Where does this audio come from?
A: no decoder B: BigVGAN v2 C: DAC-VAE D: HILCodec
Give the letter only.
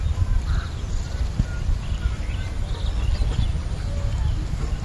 A